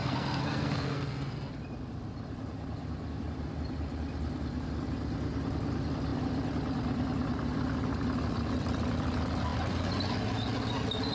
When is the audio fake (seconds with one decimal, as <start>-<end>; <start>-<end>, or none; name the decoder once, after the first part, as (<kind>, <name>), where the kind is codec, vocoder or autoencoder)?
0.0-1.5 (codec, SNAC)